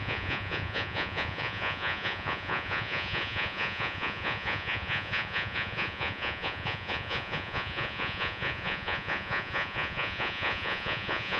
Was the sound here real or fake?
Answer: fake